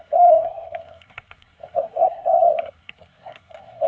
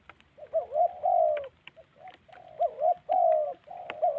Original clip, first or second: second